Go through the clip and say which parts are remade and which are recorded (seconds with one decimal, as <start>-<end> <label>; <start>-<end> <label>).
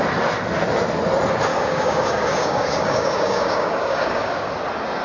0.0-1.5 recorded; 1.5-4.5 remade; 4.5-5.0 recorded